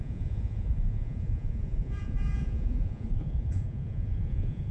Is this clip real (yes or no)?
no